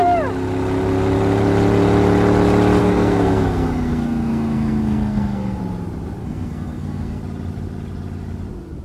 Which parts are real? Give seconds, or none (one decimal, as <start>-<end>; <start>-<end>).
0.0-2.8; 5.6-6.2; 7.2-8.8